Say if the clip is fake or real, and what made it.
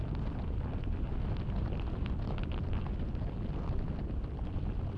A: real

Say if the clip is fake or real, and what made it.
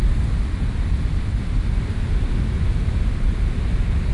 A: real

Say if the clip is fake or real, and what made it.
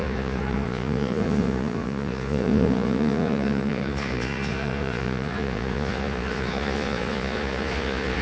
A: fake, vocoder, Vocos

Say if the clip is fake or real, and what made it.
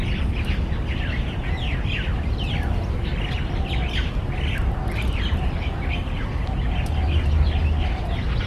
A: real